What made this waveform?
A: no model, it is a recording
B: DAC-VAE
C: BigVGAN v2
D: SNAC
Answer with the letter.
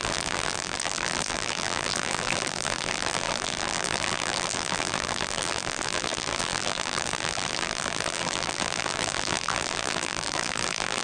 C